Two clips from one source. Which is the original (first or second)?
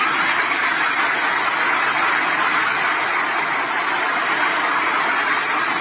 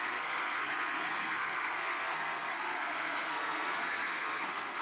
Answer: first